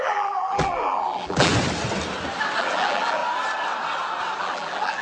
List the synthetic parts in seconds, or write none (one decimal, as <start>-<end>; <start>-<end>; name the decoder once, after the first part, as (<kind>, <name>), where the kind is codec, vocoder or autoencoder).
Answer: 0.0-1.5 (vocoder, BigVGAN v2); 2.6-3.2; 4.4-5.0